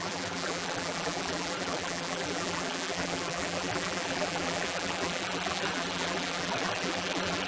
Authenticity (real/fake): fake